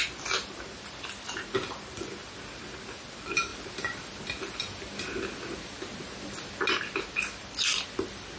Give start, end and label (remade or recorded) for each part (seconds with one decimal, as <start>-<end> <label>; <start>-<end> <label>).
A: 0.0-8.4 recorded